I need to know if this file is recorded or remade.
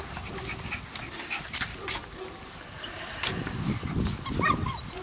recorded